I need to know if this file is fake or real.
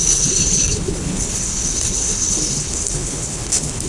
fake